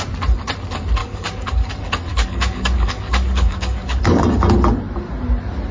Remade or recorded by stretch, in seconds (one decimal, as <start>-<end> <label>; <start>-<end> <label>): 0.0-1.0 recorded; 1.0-1.7 remade; 1.7-2.1 recorded; 2.1-4.0 remade; 4.0-5.7 recorded